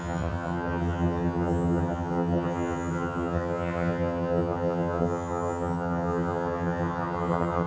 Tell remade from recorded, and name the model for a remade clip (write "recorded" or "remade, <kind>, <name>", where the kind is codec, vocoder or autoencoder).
remade, vocoder, HiFi-GAN